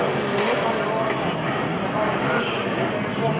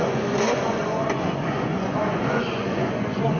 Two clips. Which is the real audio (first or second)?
first